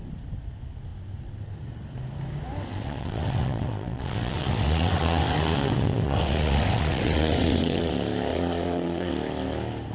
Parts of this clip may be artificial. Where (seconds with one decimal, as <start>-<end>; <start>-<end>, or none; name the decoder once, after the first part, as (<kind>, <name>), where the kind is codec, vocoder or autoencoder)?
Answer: 2.7-7.9 (vocoder, WaveNeXt); 8.3-9.1